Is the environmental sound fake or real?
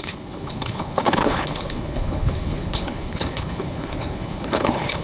fake